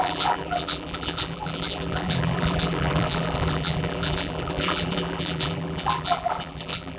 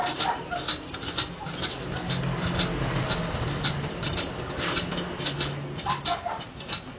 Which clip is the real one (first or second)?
second